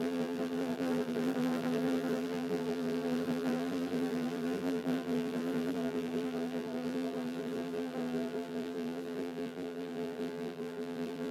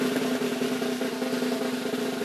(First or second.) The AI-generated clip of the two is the first